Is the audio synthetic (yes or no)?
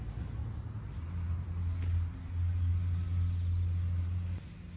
no